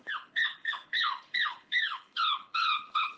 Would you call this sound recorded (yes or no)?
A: no